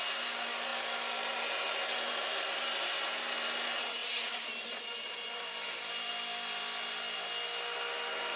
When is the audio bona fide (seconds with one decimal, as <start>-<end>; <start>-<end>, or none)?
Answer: 0.0-8.4